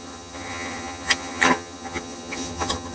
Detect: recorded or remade remade